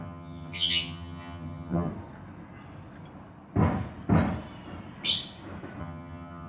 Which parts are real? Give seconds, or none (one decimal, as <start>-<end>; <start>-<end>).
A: 1.9-5.8